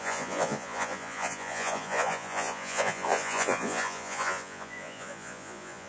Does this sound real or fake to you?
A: fake